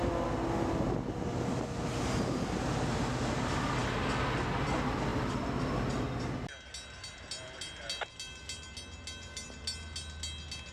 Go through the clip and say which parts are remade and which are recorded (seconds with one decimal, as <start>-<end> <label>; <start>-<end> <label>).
0.0-10.7 recorded